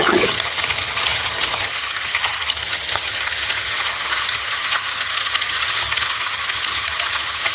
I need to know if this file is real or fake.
fake